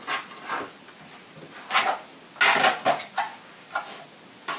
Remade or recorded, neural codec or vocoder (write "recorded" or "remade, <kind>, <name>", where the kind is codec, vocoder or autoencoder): recorded